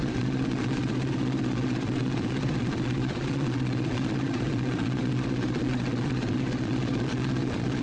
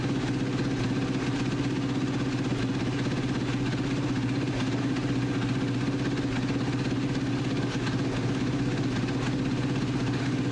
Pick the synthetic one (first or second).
first